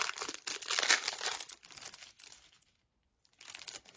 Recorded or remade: recorded